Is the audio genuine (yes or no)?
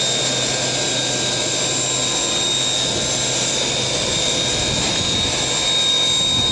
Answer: yes